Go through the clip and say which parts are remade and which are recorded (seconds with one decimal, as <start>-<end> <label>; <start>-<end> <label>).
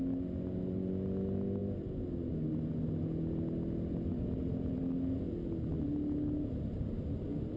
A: 0.0-4.1 recorded; 4.1-4.8 remade; 4.8-7.6 recorded